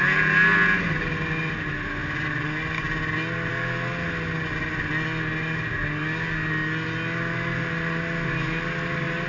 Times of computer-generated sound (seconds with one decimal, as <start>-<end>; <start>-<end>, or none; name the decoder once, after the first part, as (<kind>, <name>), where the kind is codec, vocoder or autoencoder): none